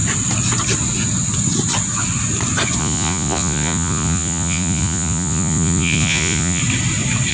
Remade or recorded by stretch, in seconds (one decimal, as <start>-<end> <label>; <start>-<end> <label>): 0.0-2.8 recorded; 2.8-6.6 remade; 6.6-7.3 recorded